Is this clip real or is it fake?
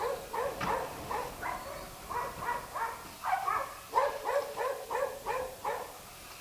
real